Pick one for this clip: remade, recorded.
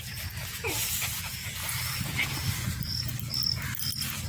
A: recorded